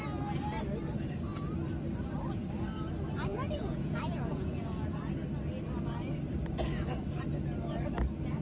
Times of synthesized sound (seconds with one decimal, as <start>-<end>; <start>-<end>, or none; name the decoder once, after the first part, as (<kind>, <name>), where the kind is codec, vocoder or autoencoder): 3.3-5.0 (vocoder, Vocos)